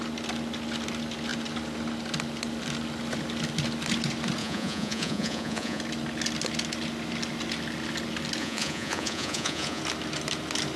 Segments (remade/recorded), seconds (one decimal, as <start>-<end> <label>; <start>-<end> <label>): 0.0-4.4 recorded; 4.4-5.8 remade; 5.8-8.4 recorded; 8.4-9.8 remade; 9.8-10.8 recorded